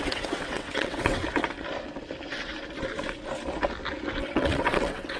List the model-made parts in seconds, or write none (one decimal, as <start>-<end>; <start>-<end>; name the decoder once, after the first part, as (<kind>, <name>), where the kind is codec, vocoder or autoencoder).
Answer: 0.0-1.2 (vocoder, WaveNeXt); 4.2-5.2